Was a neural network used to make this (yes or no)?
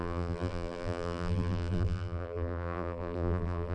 yes